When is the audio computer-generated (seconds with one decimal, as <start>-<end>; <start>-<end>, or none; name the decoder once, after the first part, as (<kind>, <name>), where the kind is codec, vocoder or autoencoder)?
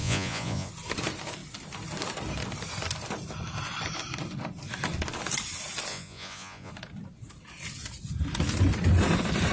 0.0-0.7 (vocoder, Vocos); 5.9-6.7